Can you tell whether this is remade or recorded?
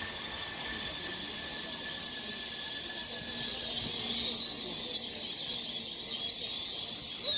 recorded